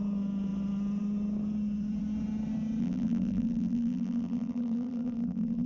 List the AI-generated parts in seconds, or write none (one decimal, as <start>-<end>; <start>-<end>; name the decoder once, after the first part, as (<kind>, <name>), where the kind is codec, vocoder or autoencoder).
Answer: 2.8-5.7 (vocoder, BigVGAN v2)